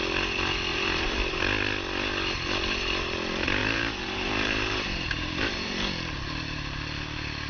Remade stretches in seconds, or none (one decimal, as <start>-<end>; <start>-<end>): 0.7-1.4; 3.6-5.9